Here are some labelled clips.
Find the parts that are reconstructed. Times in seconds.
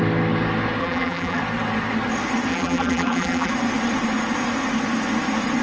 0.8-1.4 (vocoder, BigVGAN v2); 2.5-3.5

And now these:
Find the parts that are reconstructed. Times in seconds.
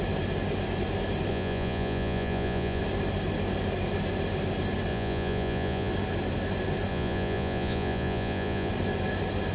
1.3-2.8 (vocoder, Vocos); 4.9-5.9; 6.9-8.7